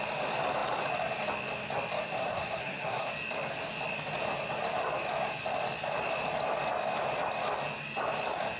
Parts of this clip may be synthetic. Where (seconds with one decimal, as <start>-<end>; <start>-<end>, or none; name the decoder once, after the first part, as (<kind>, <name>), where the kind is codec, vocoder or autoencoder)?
2.2-3.1 (codec, SNAC)